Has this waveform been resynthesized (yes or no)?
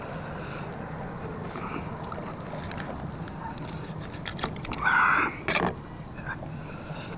no